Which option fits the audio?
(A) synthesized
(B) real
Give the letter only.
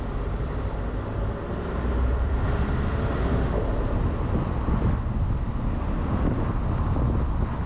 B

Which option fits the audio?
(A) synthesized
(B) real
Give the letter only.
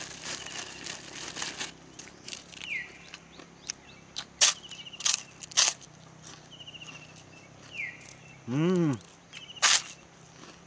B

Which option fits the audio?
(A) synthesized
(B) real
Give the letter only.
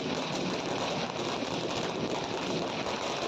B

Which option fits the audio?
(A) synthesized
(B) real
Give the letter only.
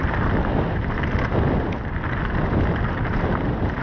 B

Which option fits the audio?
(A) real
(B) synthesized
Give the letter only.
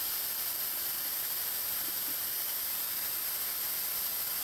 A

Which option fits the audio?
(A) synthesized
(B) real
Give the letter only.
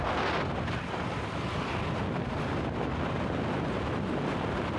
B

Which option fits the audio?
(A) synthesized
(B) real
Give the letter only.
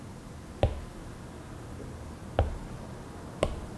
B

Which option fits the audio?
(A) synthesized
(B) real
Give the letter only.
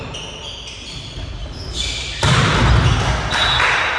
B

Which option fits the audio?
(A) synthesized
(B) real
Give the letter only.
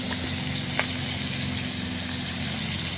B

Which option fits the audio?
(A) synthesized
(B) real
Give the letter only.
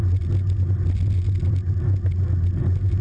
B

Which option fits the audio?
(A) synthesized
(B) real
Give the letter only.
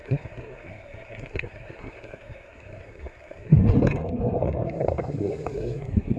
A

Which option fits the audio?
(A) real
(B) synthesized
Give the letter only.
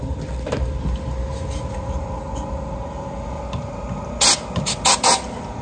A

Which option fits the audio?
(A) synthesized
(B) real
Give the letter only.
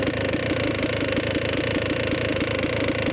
B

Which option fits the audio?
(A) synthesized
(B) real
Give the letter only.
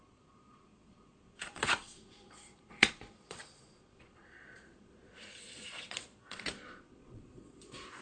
A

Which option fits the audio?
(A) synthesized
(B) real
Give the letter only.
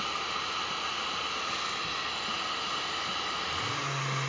B